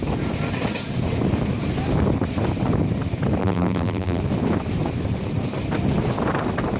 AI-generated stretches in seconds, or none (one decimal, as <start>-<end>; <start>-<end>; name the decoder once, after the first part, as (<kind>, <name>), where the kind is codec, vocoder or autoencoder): 3.4-4.2 (vocoder, BigVGAN v2)